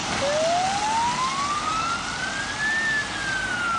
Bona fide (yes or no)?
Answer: yes